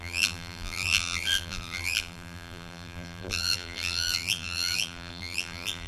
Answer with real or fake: fake